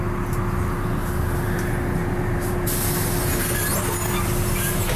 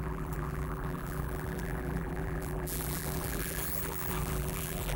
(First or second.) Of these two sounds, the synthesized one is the second